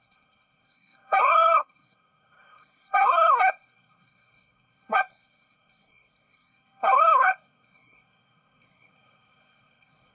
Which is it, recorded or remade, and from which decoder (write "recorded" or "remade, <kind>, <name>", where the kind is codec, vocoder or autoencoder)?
remade, codec, SNAC